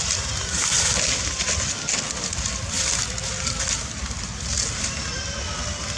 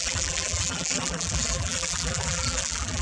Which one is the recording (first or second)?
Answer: first